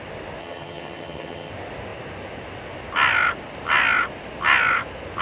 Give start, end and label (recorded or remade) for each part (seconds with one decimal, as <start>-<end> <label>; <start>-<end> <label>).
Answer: 0.0-0.4 recorded; 0.4-1.5 remade; 1.5-5.2 recorded

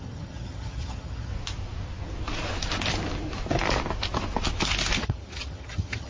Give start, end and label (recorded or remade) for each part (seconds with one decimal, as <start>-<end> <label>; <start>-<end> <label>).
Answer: 0.0-1.3 remade; 1.3-5.0 recorded; 5.0-6.1 remade

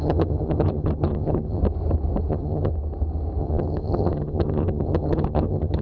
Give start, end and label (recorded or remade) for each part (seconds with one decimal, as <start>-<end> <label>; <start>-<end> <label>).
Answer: 0.0-1.6 remade; 1.6-2.3 recorded; 2.3-2.7 remade; 2.7-3.4 recorded; 3.4-5.8 remade

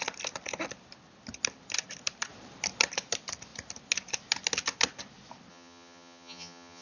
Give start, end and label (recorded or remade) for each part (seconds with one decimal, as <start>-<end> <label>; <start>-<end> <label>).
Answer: 0.0-5.5 recorded; 5.5-6.8 remade

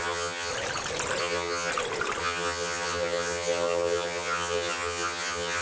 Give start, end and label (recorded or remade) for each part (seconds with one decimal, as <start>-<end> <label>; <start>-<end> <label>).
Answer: 0.0-0.5 remade; 0.5-1.2 recorded; 1.2-1.7 remade; 1.7-2.2 recorded; 2.2-5.6 remade